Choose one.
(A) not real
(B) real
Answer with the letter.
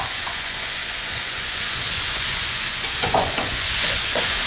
A